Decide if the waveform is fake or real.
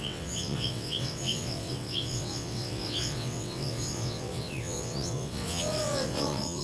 fake